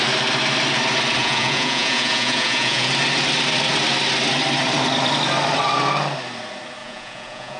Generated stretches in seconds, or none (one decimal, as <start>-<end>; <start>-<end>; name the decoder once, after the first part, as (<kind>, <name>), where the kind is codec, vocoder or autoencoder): 1.2-2.9 (vocoder, Vocos); 6.8-7.6